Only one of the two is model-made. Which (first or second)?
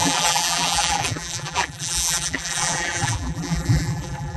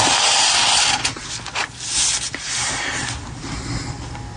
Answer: first